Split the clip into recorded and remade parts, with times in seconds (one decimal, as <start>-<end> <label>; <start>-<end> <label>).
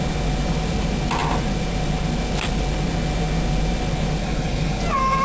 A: 0.0-4.2 recorded; 4.2-4.8 remade; 4.8-5.2 recorded